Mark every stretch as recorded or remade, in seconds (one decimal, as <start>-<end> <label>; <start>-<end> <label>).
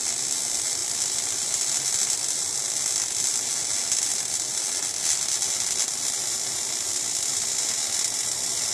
0.0-0.8 recorded; 0.8-1.6 remade; 1.6-6.2 recorded; 6.2-6.7 remade; 6.7-8.7 recorded